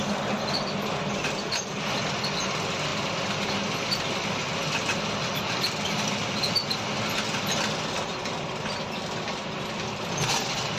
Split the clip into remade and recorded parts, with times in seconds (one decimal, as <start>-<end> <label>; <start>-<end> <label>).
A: 0.0-10.8 recorded